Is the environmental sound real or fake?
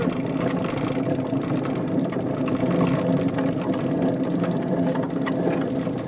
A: real